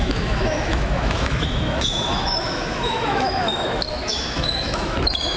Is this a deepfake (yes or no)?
yes